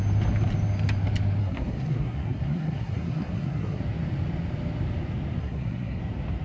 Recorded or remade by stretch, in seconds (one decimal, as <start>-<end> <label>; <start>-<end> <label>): 0.0-1.4 recorded; 1.4-3.8 remade; 3.8-5.4 recorded; 5.4-6.0 remade; 6.0-6.4 recorded